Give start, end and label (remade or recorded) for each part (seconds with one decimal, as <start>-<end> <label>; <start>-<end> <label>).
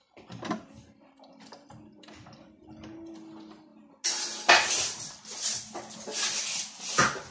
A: 0.0-7.3 recorded